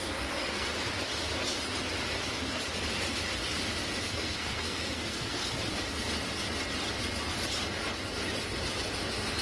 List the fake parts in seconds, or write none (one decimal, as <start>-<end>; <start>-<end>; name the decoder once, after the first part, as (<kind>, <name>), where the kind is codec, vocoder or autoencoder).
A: 0.0-0.7 (codec, SNAC); 4.0-5.4